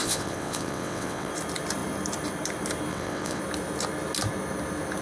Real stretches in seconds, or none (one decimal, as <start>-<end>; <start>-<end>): 1.3-2.9; 3.4-5.0